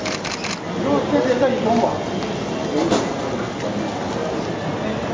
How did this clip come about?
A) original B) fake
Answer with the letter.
A